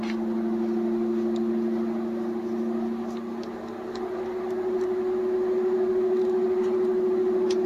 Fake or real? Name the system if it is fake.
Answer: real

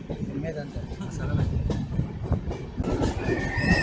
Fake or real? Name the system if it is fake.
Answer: real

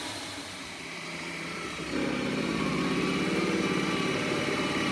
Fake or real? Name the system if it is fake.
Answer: fake, vocoder, BigVGAN v2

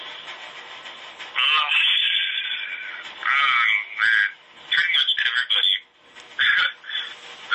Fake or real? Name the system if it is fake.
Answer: real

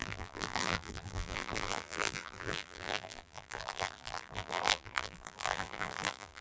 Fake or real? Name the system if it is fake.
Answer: fake, vocoder, BigVGAN v2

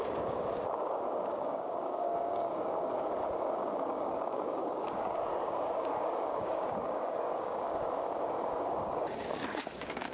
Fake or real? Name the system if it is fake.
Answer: fake, codec, DAC